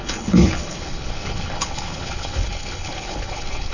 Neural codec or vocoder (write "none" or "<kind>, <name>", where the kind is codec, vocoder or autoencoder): codec, HILCodec